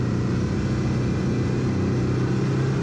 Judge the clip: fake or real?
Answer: real